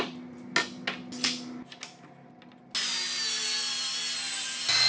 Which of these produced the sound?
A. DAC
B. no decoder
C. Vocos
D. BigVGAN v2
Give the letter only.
B